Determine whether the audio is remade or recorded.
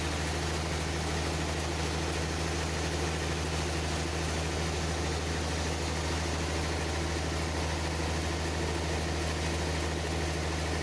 recorded